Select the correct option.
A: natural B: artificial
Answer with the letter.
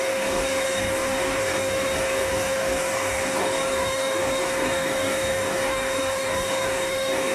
B